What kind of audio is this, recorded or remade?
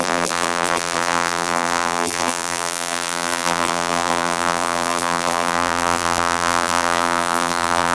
remade